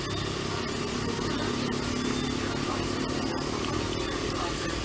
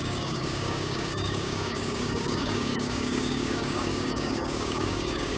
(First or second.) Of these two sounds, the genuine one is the first